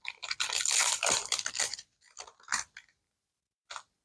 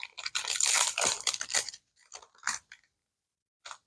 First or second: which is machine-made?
second